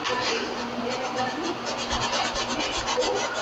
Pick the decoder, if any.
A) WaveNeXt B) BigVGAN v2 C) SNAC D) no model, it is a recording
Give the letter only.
D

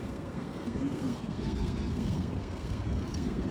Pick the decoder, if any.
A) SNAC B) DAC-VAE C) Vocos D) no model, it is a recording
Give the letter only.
A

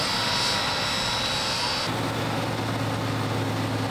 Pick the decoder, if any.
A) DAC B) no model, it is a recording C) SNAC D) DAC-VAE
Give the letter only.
B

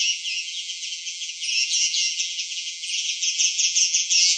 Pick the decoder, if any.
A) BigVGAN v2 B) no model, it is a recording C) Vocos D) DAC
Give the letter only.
A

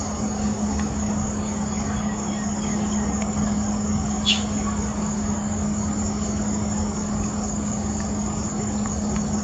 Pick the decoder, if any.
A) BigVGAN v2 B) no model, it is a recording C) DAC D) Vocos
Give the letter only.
C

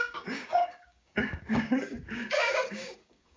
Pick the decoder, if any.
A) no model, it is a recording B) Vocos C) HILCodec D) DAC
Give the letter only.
D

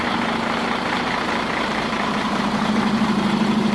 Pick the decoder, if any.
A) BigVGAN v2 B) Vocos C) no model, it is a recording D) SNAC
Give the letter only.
A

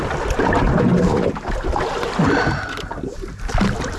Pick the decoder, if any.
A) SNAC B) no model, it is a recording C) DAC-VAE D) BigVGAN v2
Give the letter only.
B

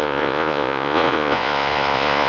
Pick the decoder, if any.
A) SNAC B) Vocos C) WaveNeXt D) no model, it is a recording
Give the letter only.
B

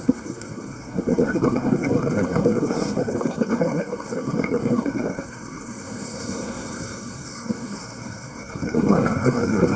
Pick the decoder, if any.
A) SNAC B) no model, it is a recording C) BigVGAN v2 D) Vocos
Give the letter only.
A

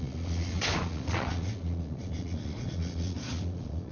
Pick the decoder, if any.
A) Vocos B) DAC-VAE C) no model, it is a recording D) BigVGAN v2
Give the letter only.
A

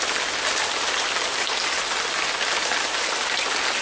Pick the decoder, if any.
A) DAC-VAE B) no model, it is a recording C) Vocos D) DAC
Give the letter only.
B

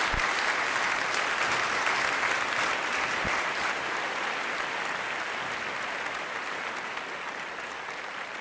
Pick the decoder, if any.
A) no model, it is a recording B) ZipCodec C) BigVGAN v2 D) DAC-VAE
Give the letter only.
A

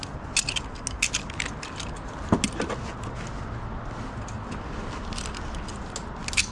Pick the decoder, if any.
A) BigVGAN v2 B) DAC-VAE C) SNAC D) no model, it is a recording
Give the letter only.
D